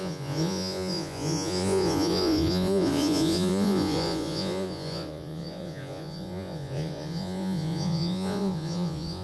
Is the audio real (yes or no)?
no